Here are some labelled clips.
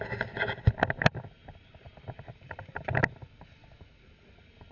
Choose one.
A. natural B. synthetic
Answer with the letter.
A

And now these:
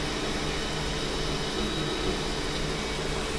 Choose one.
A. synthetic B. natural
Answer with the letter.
B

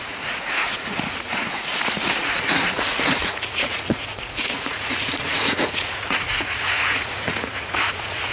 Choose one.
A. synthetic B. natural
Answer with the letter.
A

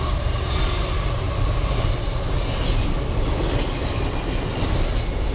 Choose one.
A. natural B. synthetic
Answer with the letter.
A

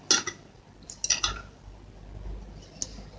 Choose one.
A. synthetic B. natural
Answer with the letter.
B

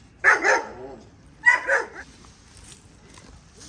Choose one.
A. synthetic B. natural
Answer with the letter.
B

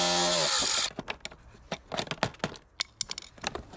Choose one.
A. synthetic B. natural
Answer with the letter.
B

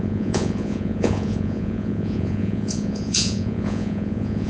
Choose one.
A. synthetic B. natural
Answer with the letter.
A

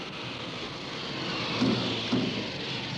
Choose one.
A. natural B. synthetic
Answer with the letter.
A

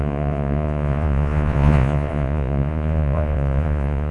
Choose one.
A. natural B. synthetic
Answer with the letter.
B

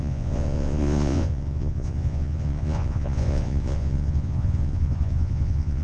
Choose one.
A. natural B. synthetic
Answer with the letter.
B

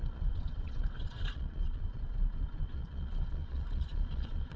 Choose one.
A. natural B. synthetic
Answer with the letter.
B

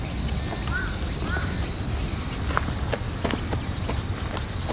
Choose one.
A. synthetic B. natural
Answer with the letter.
B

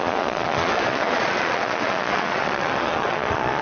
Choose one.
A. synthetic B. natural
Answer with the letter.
A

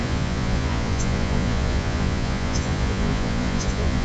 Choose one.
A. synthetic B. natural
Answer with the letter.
A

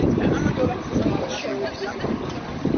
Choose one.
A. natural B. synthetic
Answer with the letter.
A